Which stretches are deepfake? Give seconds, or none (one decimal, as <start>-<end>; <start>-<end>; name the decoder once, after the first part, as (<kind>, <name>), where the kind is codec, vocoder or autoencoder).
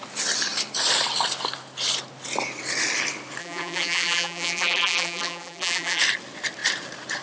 3.4-6.0 (vocoder, BigVGAN v2)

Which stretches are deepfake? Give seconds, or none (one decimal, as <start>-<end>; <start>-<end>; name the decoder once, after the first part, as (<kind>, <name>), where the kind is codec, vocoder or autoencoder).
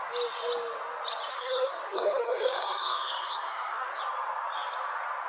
1.3-4.0 (codec, SNAC)